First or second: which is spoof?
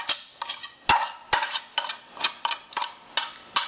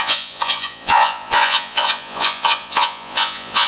second